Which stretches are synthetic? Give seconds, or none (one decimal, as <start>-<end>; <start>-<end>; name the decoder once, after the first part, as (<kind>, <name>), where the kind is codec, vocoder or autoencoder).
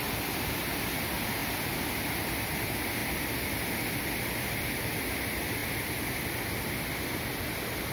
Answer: none